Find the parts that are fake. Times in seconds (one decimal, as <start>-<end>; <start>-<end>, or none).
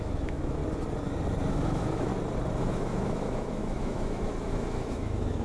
0.0-0.6; 1.5-2.1; 2.6-5.4